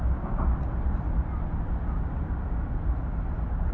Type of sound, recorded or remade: recorded